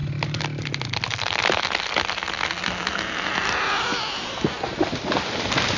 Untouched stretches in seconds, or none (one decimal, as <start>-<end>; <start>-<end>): 0.0-5.8